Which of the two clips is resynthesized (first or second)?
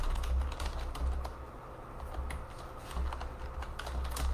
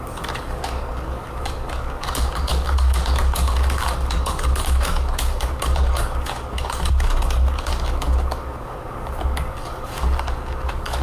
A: second